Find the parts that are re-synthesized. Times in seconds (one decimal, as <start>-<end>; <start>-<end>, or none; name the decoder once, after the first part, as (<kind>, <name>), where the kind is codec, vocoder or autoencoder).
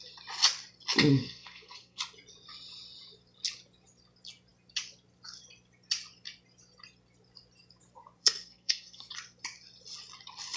1.1-2.0 (codec, SNAC); 8.2-9.1